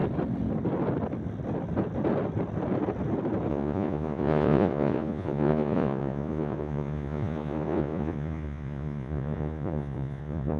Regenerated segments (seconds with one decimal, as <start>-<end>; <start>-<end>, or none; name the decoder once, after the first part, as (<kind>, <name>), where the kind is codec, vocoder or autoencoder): 3.5-10.6 (vocoder, Vocos)